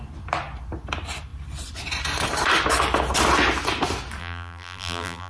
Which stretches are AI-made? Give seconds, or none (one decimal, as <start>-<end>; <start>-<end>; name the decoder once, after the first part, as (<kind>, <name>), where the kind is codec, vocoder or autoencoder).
4.2-5.3 (vocoder, BigVGAN v2)